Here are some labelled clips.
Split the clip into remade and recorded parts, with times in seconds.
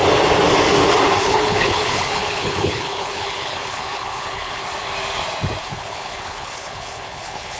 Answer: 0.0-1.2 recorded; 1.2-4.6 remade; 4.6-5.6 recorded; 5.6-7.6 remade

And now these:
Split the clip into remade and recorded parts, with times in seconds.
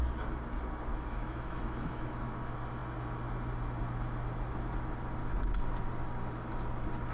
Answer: 0.0-0.9 recorded; 0.9-2.2 remade; 2.2-7.1 recorded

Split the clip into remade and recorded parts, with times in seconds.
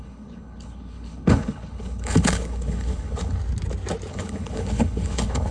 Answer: 0.0-3.4 remade; 3.4-4.1 recorded; 4.1-5.5 remade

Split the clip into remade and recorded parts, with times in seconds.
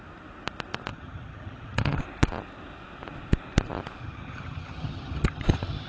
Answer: 0.0-0.9 recorded; 0.9-2.0 remade; 2.0-4.0 recorded; 4.0-5.9 remade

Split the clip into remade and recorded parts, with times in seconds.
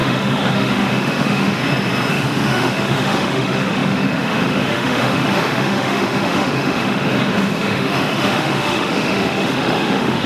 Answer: 0.0-1.6 remade; 1.6-2.1 recorded; 2.1-7.1 remade; 7.1-7.6 recorded; 7.6-10.3 remade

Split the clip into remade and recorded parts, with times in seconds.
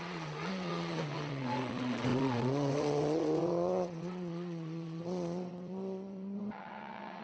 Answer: 0.0-7.2 remade